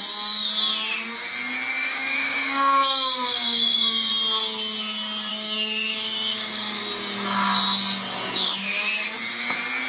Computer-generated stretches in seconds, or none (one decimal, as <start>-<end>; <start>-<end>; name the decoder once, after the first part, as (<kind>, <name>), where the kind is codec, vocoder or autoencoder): 1.7-4.1 (codec, DAC); 5.3-6.8